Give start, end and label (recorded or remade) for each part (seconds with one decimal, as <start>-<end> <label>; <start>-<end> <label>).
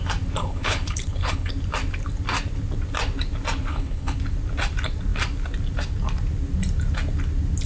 0.0-0.4 recorded; 0.4-1.5 remade; 1.5-3.7 recorded; 3.7-4.2 remade; 4.2-7.7 recorded